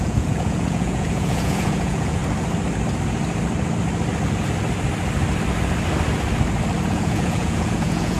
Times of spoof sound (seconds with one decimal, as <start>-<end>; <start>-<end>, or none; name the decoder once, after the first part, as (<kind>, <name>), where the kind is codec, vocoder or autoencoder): 0.0-2.2 (vocoder, Vocos); 6.9-8.2